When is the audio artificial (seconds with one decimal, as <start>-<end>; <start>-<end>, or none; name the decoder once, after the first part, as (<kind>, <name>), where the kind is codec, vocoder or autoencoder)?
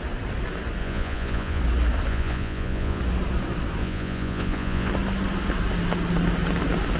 0.8-1.6 (vocoder, Vocos); 2.1-3.0; 3.8-4.9